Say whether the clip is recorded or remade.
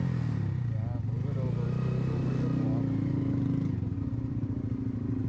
recorded